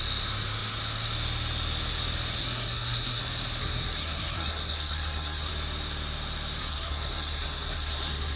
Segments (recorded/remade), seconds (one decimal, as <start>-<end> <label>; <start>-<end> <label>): 0.0-2.4 recorded; 2.4-3.2 remade; 3.2-3.6 recorded; 3.6-5.5 remade; 5.5-6.6 recorded; 6.6-8.4 remade